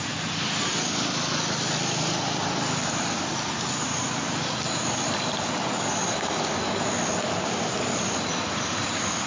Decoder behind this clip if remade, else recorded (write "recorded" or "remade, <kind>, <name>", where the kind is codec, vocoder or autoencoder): recorded